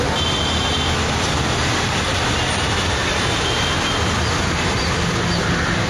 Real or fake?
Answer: real